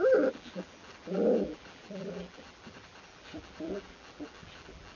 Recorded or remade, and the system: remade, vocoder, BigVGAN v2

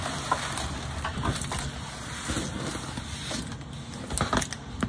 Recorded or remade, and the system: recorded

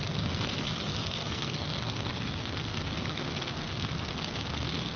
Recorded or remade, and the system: remade, codec, SNAC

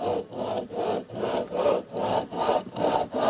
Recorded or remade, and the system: recorded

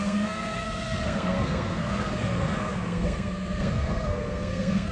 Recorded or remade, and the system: remade, codec, SNAC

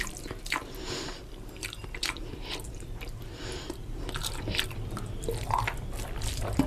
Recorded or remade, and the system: remade, vocoder, BigVGAN v2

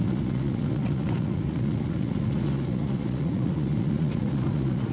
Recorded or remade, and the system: remade, vocoder, Vocos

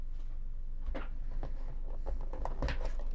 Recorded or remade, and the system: recorded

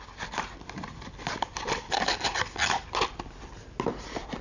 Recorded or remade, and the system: recorded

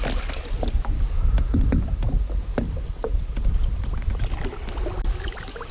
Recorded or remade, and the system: recorded